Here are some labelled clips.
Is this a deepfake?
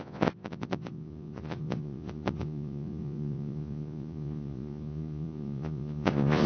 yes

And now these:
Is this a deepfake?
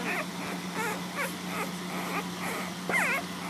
yes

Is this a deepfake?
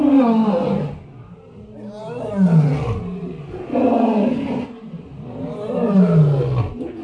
no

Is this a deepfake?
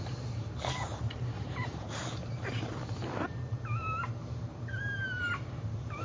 yes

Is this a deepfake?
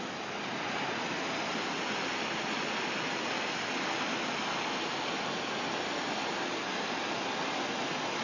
no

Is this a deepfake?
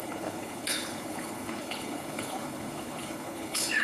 yes